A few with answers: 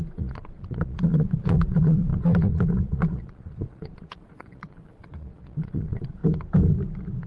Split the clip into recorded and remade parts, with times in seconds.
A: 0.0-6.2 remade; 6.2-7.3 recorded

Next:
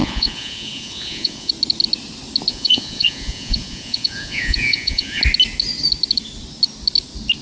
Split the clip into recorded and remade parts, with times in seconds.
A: 0.0-1.5 remade; 1.5-2.5 recorded; 2.5-5.2 remade; 5.2-7.4 recorded

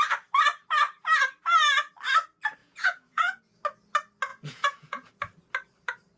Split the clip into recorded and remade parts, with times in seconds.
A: 0.0-2.6 recorded; 2.6-3.4 remade; 3.4-4.3 recorded; 4.3-5.1 remade; 5.1-6.2 recorded

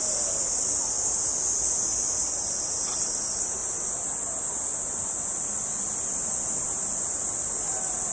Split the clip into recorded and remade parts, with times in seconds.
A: 0.0-8.1 recorded

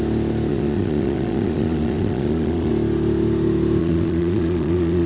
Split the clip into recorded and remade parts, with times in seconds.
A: 0.0-0.5 recorded; 0.5-2.7 remade; 2.7-3.8 recorded; 3.8-5.1 remade

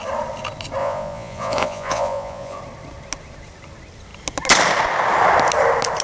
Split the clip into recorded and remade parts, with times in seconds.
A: 0.0-0.8 recorded; 0.8-2.6 remade; 2.6-6.0 recorded

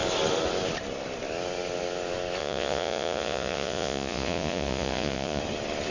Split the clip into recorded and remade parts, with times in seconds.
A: 0.0-2.4 recorded; 2.4-5.4 remade; 5.4-5.9 recorded

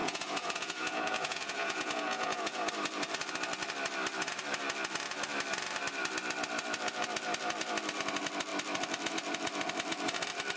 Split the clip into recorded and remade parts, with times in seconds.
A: 0.0-2.7 remade; 2.7-10.6 recorded